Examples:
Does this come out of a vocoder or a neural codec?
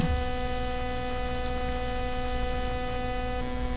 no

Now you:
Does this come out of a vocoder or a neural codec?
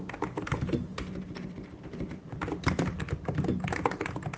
no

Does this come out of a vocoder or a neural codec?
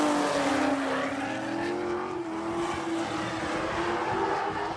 no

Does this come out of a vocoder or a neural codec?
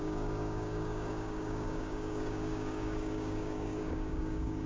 yes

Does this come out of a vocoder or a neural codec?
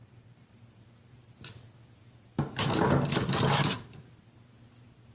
no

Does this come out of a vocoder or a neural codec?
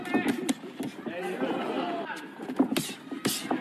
no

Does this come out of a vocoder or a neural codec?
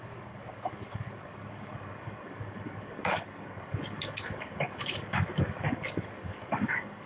yes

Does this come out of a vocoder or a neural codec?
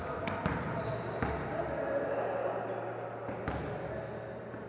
no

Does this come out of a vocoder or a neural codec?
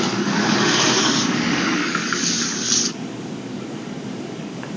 yes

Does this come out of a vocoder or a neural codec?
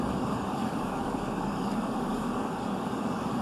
yes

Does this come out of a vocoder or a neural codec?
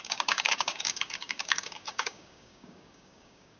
yes